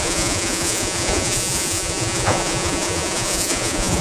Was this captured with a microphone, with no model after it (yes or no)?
no